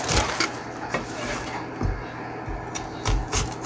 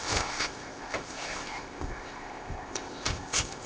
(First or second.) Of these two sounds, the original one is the first